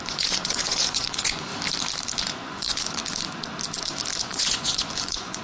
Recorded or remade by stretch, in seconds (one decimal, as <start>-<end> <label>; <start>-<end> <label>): 0.0-1.5 remade; 1.5-2.2 recorded; 2.2-3.0 remade; 3.0-4.2 recorded; 4.2-5.4 remade